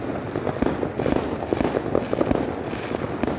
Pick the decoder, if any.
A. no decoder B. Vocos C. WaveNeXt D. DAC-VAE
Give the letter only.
A